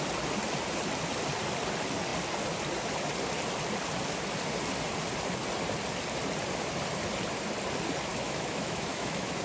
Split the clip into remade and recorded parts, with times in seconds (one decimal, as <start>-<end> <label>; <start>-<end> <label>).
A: 0.0-8.1 recorded; 8.1-9.4 remade